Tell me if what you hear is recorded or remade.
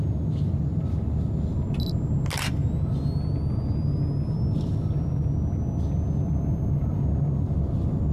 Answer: recorded